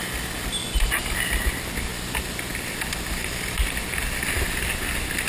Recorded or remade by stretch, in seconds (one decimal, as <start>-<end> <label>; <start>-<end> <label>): 0.0-5.3 recorded